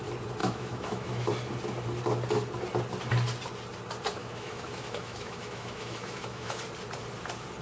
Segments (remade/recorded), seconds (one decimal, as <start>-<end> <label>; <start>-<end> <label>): 0.0-0.4 recorded; 0.4-1.3 remade; 1.3-4.2 recorded; 4.2-6.6 remade; 6.6-7.6 recorded